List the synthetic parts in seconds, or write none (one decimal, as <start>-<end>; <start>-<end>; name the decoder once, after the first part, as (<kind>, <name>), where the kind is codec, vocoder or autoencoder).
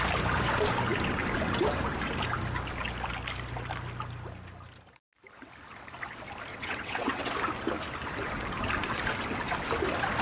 6.5-7.3 (vocoder, WaveNeXt)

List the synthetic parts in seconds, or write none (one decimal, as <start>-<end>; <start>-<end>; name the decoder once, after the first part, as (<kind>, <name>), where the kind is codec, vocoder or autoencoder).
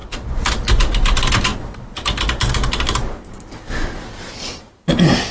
0.0-0.5 (vocoder, BigVGAN v2)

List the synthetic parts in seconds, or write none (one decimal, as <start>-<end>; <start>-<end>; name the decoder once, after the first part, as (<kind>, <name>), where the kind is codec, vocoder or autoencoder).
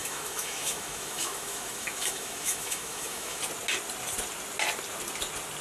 0.0-3.4 (autoencoder, DAC-VAE)